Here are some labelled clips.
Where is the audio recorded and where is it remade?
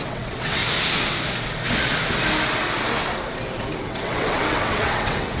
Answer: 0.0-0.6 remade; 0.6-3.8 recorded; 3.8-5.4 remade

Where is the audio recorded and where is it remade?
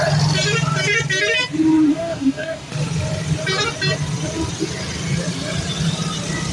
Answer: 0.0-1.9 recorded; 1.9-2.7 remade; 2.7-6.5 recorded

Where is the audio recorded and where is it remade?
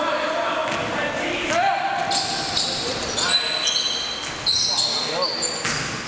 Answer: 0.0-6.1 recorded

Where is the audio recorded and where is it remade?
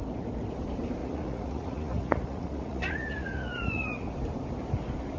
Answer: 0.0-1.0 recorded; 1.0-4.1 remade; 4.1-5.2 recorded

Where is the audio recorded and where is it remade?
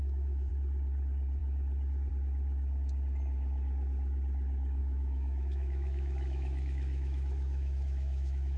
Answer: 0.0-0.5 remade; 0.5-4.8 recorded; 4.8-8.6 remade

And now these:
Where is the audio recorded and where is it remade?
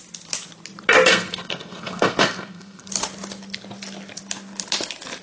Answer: 0.0-1.1 recorded; 1.1-2.9 remade; 2.9-5.2 recorded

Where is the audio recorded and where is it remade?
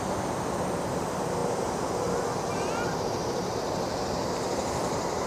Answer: 0.0-5.3 remade